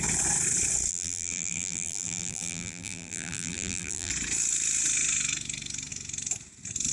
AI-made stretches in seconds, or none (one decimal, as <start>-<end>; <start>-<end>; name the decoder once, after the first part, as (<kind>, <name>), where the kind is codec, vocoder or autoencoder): 0.9-4.1 (vocoder, BigVGAN v2)